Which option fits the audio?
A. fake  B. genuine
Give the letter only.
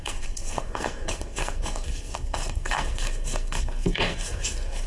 A